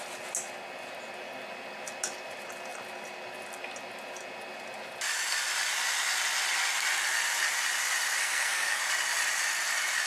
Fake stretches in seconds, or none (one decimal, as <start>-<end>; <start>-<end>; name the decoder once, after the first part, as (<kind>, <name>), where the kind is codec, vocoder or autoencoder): 8.2-8.8 (codec, SNAC)